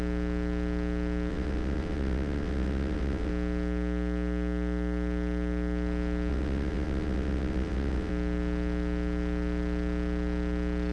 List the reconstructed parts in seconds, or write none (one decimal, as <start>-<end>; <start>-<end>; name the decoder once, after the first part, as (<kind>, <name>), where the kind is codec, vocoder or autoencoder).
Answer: 1.3-3.3 (vocoder, WaveNeXt); 6.3-8.1